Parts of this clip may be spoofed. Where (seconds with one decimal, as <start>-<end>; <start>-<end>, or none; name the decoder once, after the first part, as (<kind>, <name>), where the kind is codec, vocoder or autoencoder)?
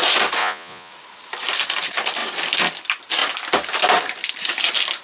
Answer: 0.4-0.9 (vocoder, Vocos)